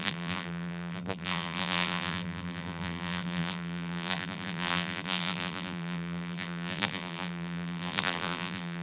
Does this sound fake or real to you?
fake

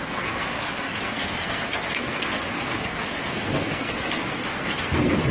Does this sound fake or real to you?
fake